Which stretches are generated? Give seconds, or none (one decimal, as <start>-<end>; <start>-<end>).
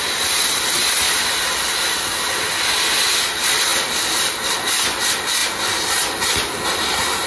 none